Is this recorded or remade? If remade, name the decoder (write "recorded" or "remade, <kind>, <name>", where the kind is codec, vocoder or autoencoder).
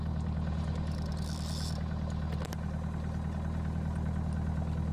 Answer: recorded